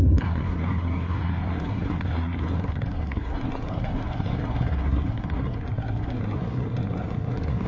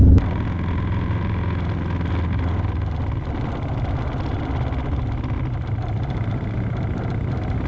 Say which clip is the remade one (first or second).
first